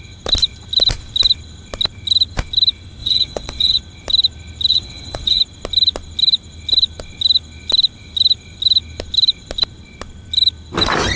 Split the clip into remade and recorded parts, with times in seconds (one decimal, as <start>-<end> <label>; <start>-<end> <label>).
0.0-3.0 recorded; 3.0-3.8 remade; 3.8-4.7 recorded; 4.7-5.4 remade; 5.4-11.2 recorded

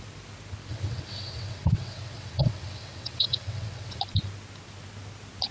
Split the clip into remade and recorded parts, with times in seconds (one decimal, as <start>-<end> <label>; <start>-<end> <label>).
0.0-0.7 recorded; 0.7-4.0 remade; 4.0-5.5 recorded